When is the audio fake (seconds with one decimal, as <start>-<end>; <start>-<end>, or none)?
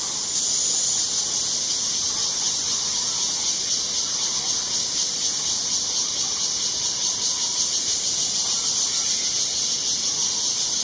2.2-2.9